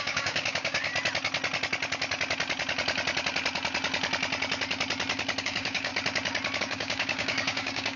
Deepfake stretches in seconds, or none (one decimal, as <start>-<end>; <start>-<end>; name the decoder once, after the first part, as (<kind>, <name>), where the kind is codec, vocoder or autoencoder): 0.0-0.9 (codec, DAC); 5.4-5.9; 6.6-8.0